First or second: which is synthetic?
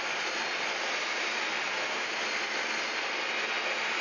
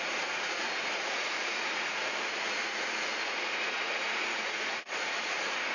second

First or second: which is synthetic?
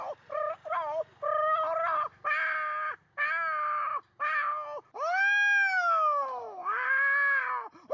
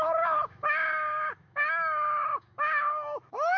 second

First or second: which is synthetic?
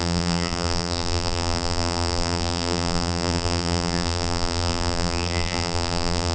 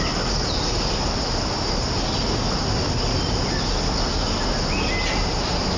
first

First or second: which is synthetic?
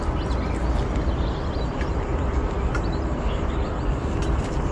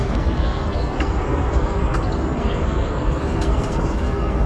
second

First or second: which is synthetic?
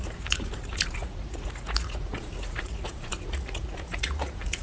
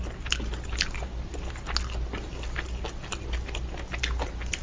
first